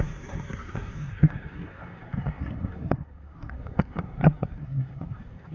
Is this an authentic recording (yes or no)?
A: no